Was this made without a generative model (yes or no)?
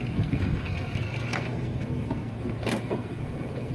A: no